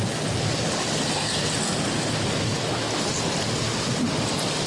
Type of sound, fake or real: real